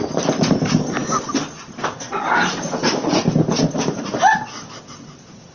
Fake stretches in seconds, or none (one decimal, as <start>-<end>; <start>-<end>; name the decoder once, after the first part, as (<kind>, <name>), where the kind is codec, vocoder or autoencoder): none